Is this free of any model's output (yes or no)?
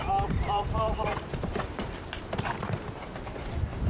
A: no